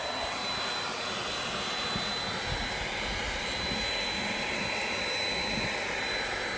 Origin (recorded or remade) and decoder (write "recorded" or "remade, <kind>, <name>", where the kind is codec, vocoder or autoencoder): recorded